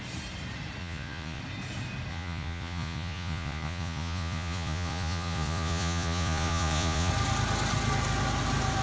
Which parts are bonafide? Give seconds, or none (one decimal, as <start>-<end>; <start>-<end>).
0.0-0.8; 1.4-2.1; 7.1-8.8